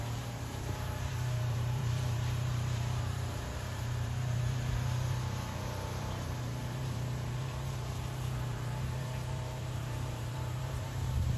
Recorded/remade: remade